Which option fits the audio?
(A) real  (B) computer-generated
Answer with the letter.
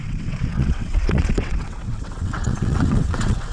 B